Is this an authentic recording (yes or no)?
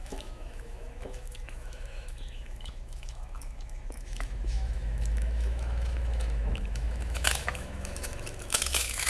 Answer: no